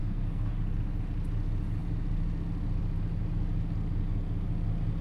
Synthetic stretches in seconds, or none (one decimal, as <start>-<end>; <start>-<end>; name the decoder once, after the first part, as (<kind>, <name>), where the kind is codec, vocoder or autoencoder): 0.0-0.5 (codec, SNAC)